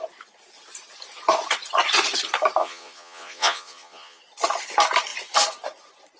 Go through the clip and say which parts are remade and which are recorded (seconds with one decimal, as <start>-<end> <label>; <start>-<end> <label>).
0.0-2.6 recorded; 2.6-4.2 remade; 4.2-6.2 recorded